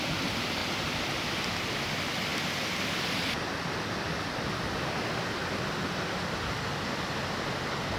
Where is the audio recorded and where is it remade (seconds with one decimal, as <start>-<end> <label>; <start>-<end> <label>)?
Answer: 0.0-8.0 recorded